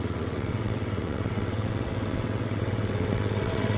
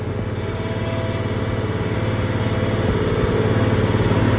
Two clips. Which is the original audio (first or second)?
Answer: second